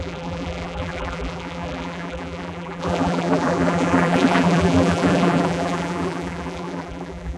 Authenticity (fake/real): fake